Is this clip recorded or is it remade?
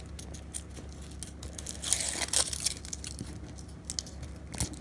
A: recorded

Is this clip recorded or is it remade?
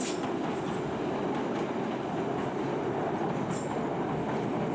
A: recorded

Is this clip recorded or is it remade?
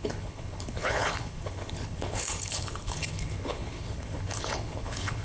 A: remade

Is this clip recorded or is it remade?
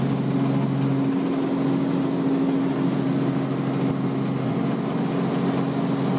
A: recorded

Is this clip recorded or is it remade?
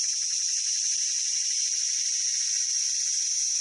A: recorded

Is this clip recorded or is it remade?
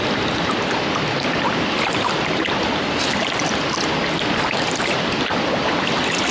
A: recorded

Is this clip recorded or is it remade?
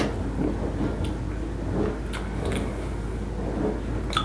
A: recorded